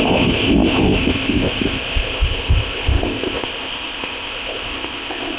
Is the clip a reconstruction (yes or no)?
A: yes